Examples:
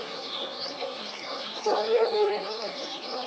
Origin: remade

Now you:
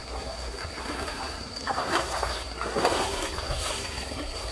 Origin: remade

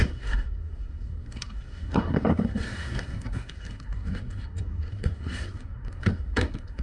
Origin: remade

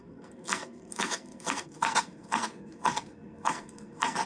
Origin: remade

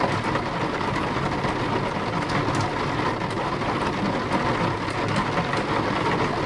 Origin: recorded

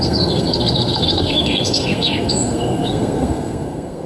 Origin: remade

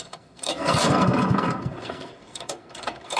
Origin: remade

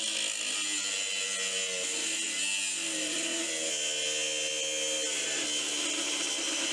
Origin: recorded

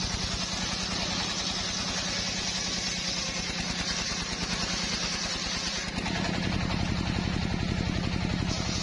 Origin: recorded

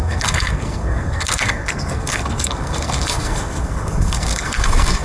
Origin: remade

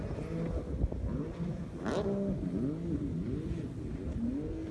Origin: recorded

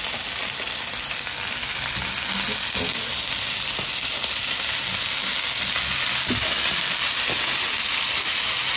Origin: recorded